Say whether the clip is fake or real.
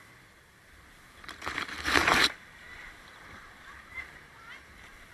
fake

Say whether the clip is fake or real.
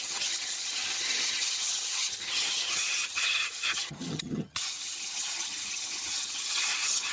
fake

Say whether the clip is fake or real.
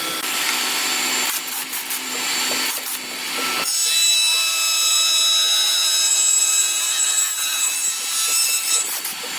fake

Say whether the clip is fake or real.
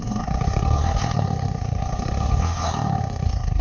fake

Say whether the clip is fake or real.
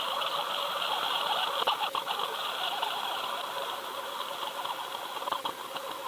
fake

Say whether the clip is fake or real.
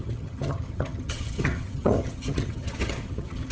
fake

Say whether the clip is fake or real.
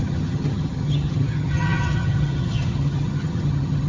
fake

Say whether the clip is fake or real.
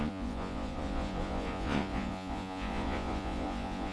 fake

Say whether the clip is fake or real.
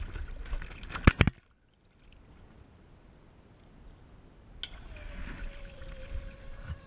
real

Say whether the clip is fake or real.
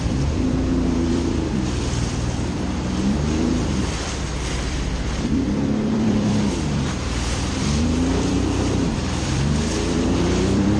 fake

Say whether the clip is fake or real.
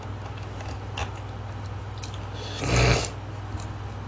real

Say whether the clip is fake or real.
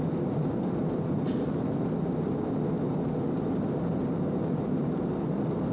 real